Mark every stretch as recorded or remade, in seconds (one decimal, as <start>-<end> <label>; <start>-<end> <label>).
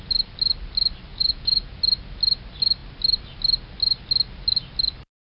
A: 0.0-1.1 recorded; 1.1-1.7 remade; 1.7-5.2 recorded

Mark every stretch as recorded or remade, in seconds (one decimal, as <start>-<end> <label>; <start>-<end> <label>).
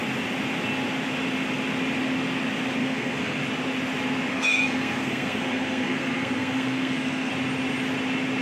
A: 0.0-2.8 recorded; 2.8-3.4 remade; 3.4-4.3 recorded; 4.3-7.3 remade; 7.3-8.4 recorded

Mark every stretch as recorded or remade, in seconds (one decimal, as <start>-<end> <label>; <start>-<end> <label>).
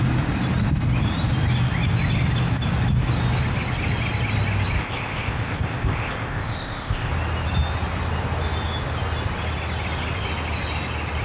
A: 0.0-4.8 recorded; 4.8-7.1 remade; 7.1-11.2 recorded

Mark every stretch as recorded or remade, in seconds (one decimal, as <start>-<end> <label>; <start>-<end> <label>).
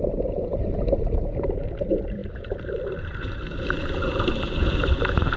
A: 0.0-5.4 remade